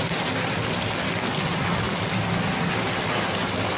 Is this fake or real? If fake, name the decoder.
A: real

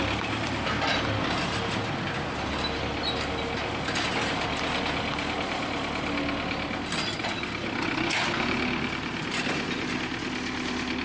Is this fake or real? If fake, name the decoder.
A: real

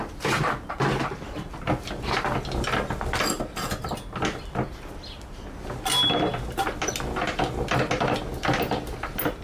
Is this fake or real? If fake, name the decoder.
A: real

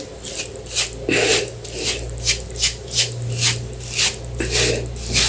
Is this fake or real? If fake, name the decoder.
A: real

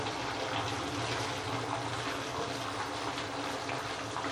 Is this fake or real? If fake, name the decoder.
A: real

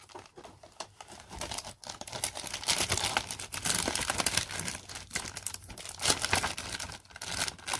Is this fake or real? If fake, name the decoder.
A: real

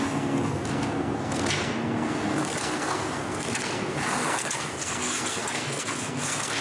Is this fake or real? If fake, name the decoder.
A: fake, codec, SNAC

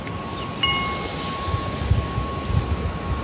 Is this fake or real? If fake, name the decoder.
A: real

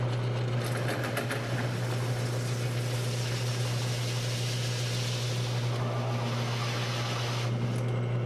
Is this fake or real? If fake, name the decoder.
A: real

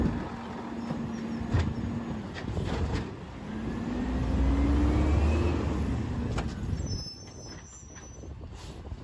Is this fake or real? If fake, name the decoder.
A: real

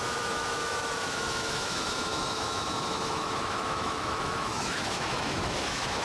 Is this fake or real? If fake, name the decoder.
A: fake, autoencoder, DAC-VAE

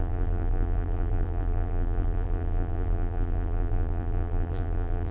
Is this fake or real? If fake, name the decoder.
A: fake, vocoder, BigVGAN v2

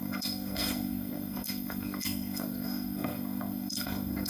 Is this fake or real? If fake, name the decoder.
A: fake, codec, SNAC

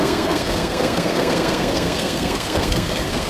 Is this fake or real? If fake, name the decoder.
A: fake, codec, SNAC